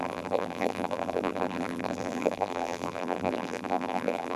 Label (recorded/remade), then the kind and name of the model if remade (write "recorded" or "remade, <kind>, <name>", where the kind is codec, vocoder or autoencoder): remade, vocoder, BigVGAN v2